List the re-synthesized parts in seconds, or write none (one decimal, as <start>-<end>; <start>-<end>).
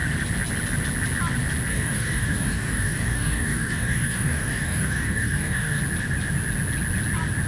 1.7-5.8